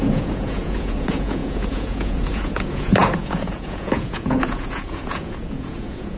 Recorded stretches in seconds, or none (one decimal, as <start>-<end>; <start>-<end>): none